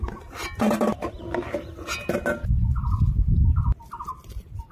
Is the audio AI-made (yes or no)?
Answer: no